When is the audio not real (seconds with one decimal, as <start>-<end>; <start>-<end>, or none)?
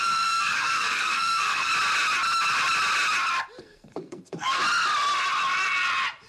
0.0-1.7; 3.6-4.6